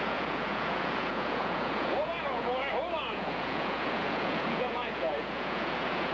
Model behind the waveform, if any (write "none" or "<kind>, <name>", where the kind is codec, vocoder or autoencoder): vocoder, Vocos